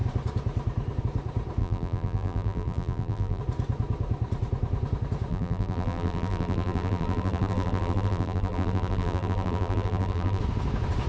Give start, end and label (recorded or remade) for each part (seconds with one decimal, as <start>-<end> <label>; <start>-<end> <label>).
0.0-1.6 recorded; 1.6-3.4 remade; 3.4-5.3 recorded; 5.3-10.4 remade; 10.4-11.1 recorded